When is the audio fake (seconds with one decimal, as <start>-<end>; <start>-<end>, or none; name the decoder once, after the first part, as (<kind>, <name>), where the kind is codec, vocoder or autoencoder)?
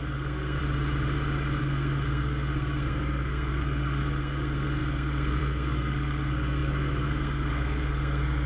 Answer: 0.0-0.6 (codec, SNAC); 1.6-8.5